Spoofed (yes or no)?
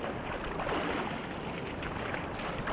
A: no